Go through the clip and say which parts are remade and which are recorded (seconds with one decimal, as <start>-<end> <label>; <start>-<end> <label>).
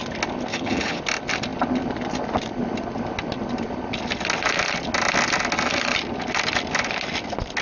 0.0-0.5 recorded; 0.5-1.0 remade; 1.0-7.6 recorded